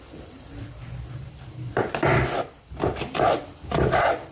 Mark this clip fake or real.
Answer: real